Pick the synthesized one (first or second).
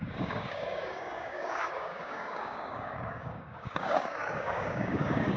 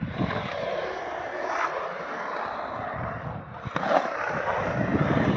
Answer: first